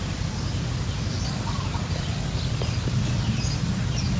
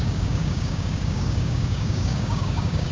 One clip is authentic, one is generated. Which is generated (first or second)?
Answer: second